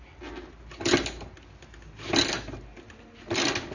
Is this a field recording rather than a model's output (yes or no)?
yes